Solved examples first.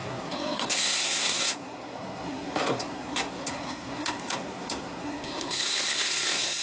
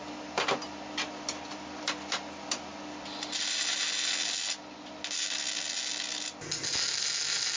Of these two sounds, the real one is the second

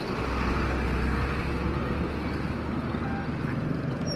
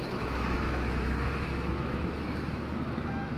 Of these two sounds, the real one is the first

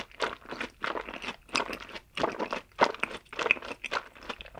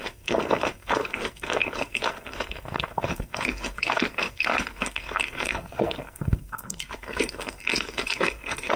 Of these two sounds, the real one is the first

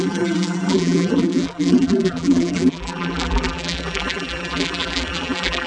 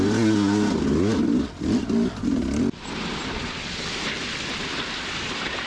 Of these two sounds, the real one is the second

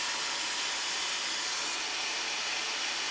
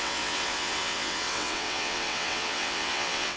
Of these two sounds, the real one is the first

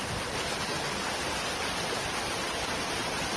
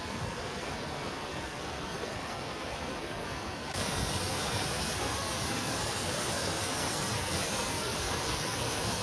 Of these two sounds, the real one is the first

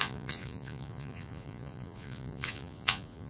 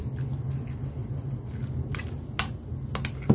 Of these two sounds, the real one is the second